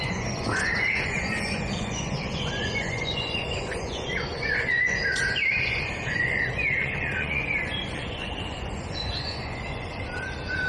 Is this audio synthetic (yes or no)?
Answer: yes